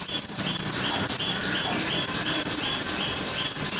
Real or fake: real